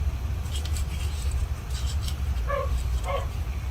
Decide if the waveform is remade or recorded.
recorded